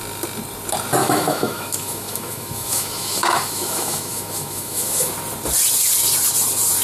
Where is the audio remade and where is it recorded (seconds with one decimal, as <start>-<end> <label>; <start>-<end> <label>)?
0.0-1.0 recorded; 1.0-5.1 remade; 5.1-6.8 recorded